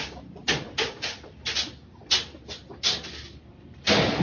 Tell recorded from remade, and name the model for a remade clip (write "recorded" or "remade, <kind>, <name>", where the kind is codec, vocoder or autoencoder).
recorded